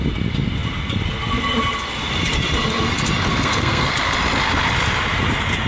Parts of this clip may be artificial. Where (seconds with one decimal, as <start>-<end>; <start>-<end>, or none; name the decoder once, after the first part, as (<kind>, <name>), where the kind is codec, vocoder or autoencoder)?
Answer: 3.3-3.9 (codec, SNAC)